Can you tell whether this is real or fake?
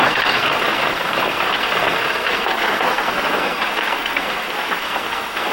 fake